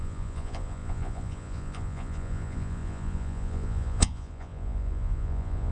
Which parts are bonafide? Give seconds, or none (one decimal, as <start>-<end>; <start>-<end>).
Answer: none